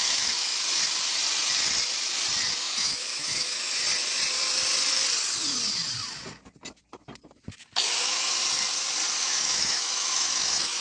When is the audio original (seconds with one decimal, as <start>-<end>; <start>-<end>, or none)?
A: 0.5-2.6; 3.8-7.8; 8.4-9.2